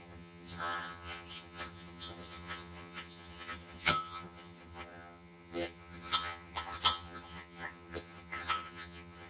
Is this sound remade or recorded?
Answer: remade